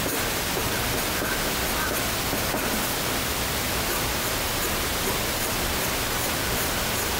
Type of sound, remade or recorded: remade